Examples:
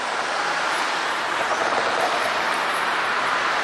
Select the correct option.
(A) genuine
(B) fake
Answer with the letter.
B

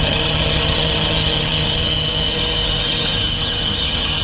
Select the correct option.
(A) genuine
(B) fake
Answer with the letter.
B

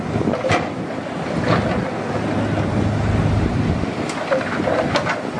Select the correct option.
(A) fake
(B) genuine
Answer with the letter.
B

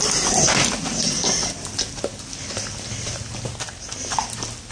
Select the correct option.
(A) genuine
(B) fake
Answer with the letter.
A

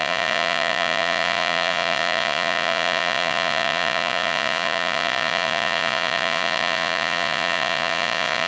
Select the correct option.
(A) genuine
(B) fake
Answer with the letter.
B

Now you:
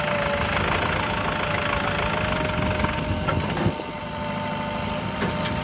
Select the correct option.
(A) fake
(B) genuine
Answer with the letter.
B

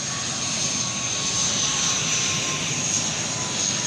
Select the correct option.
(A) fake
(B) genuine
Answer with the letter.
B